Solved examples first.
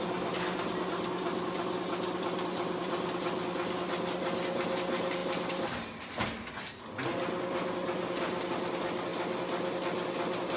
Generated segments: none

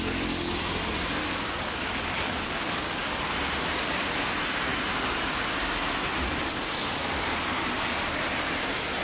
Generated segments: 1.2-3.1 (codec, DAC)

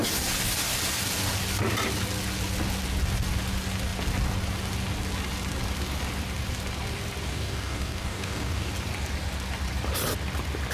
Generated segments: 7.3-8.7 (codec, DAC)

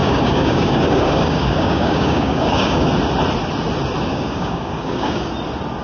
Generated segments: 0.0-2.9 (codec, DAC); 4.1-5.3

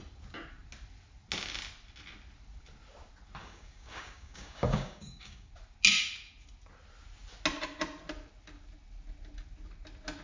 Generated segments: 3.4-5.5 (codec, DAC)

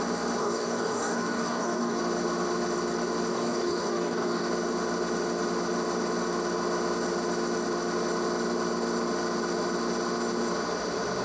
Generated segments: 0.4-2.0 (codec, DAC); 3.3-4.5

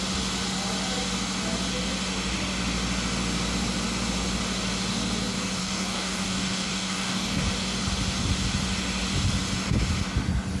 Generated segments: 5.6-7.4 (codec, DAC)